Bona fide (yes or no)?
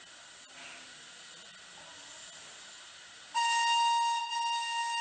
yes